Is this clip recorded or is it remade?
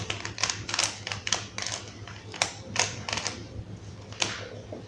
recorded